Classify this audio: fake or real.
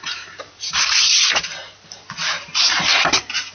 fake